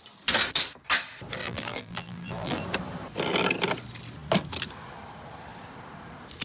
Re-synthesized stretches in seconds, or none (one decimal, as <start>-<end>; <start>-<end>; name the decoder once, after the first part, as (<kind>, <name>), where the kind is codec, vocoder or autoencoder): 1.4-2.6 (vocoder, BigVGAN v2)